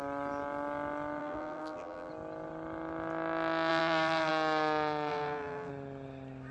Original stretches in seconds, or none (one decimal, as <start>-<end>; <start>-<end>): 0.0-1.2; 2.1-3.7; 4.3-5.1; 5.7-6.5